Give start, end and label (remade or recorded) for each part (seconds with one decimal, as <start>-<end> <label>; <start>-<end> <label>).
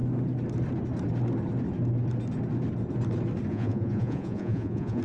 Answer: 0.0-3.5 recorded; 3.5-5.0 remade